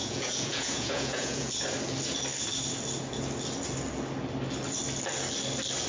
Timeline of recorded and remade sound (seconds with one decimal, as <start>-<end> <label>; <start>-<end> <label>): 0.0-1.5 remade; 1.5-5.9 recorded